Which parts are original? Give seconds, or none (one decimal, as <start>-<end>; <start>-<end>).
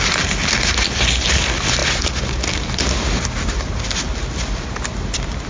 0.0-5.5